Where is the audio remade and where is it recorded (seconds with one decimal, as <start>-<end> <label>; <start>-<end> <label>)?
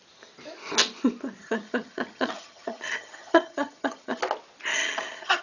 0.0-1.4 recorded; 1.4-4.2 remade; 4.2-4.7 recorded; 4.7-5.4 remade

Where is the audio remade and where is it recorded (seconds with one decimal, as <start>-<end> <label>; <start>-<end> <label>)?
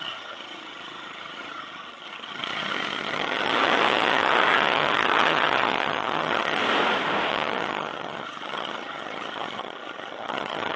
0.0-6.6 remade; 6.6-7.3 recorded; 7.3-10.8 remade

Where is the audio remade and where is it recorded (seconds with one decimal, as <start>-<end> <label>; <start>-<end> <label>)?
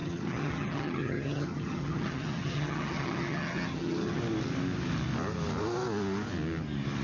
0.0-4.2 remade; 4.2-7.0 recorded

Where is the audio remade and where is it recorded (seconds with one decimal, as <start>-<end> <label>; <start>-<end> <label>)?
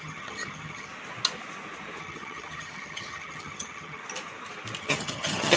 0.0-0.9 remade; 0.9-2.0 recorded; 2.0-4.0 remade; 4.0-4.8 recorded; 4.8-5.6 remade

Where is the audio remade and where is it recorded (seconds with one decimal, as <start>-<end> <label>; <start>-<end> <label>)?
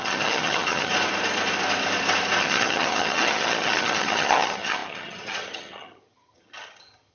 0.0-0.9 remade; 0.9-2.4 recorded; 2.4-7.1 remade